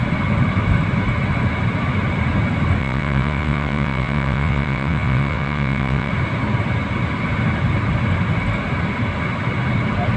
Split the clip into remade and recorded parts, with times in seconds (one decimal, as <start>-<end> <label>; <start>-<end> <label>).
0.0-2.8 recorded; 2.8-6.1 remade; 6.1-10.2 recorded